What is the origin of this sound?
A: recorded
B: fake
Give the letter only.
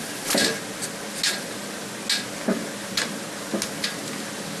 A